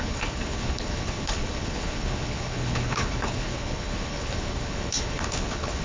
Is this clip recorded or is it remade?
remade